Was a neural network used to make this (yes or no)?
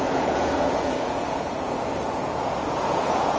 yes